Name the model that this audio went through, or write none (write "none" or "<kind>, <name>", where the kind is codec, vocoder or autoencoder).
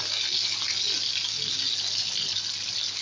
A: none